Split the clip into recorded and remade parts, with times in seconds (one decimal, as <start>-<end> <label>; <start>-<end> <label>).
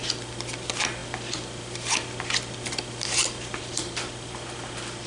0.0-5.1 recorded